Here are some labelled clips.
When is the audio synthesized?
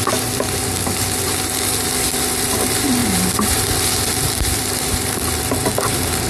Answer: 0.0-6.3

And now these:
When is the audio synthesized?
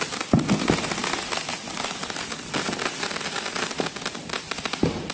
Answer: none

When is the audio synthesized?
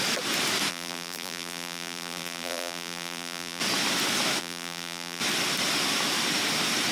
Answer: 0.7-3.6; 4.4-5.2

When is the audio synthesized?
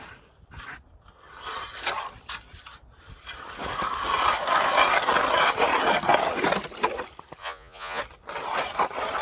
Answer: 7.4-8.0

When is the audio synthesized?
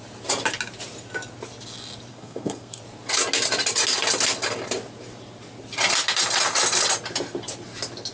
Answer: 2.1-2.8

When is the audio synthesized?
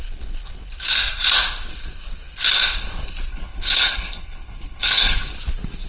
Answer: 3.3-5.3